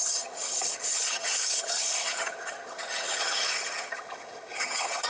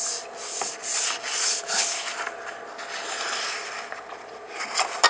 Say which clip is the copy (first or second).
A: first